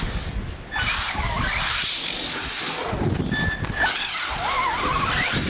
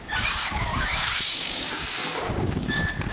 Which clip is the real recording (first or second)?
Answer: first